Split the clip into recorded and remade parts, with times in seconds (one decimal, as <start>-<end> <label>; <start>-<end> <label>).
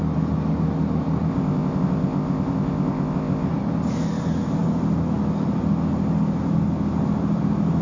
0.0-1.3 recorded; 1.3-3.5 remade; 3.5-7.8 recorded